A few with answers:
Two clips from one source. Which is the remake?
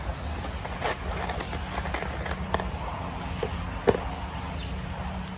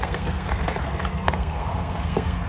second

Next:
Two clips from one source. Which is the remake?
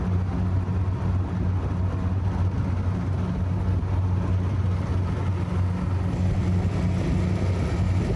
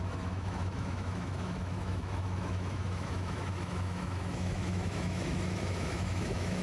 second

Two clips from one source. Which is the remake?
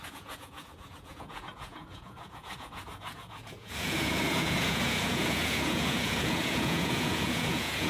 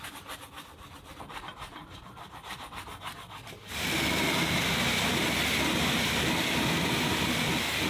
first